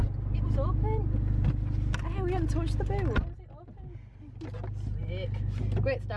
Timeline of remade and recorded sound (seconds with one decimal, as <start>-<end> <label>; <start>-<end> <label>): 0.0-6.2 recorded